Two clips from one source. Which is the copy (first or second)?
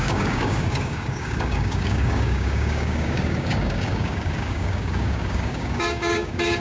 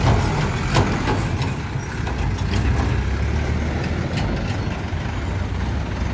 first